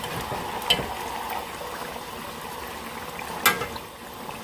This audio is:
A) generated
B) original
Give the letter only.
B